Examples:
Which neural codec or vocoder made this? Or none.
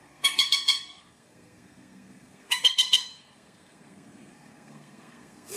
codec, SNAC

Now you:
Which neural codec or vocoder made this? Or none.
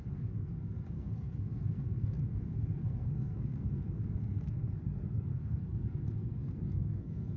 codec, SNAC